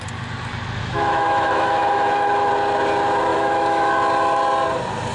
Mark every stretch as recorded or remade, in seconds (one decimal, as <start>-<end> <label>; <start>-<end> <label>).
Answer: 0.0-0.8 recorded; 0.8-2.5 remade; 2.5-3.3 recorded; 3.3-3.9 remade; 3.9-5.1 recorded